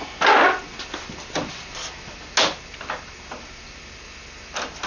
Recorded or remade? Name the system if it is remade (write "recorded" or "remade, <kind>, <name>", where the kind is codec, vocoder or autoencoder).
recorded